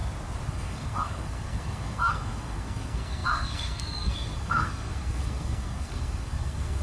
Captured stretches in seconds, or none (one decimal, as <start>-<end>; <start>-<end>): 0.0-0.5

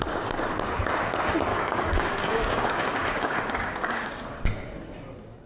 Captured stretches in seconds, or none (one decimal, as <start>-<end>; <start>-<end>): 0.0-1.5; 4.2-5.5

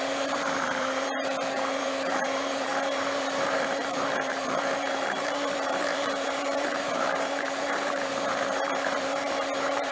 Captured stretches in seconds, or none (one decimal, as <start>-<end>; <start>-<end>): none

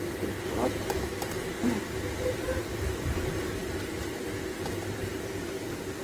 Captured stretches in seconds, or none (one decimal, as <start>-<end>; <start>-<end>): 0.0-6.0

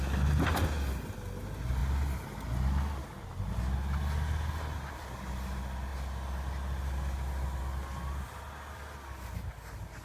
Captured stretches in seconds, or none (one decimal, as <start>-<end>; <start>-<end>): 0.0-10.0

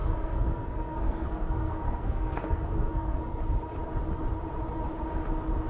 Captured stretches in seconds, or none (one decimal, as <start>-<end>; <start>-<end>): 3.4-5.7

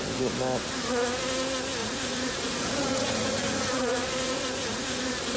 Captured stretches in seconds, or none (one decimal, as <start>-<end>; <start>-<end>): 0.0-1.8; 5.0-5.4